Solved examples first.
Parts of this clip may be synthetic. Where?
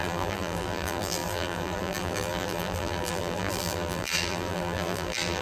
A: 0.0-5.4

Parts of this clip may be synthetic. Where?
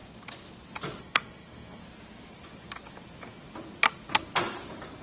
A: 1.0-1.8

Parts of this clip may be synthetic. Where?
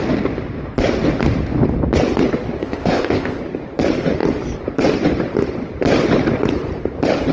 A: 2.6-3.4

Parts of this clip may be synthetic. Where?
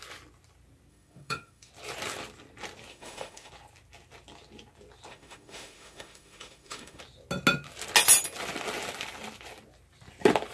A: 0.9-1.7; 2.9-3.5; 5.1-7.0